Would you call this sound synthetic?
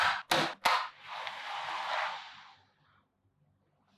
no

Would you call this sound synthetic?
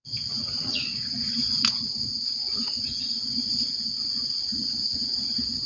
yes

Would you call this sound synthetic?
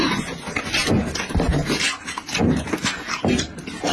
no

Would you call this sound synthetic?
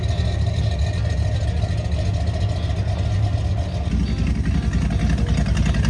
no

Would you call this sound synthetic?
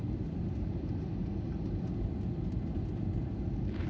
no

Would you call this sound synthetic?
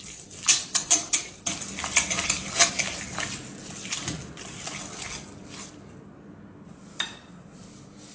no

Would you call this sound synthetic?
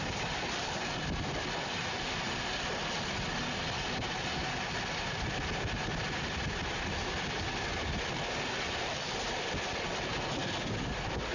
no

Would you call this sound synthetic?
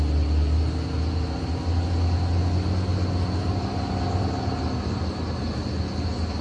no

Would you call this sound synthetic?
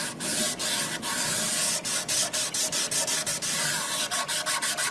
no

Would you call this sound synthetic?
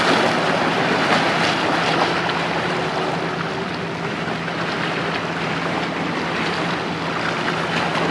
no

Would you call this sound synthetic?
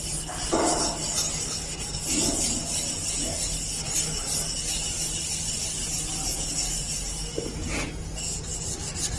no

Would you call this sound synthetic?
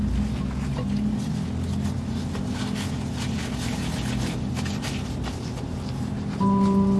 no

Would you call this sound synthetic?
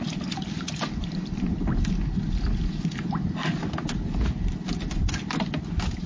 no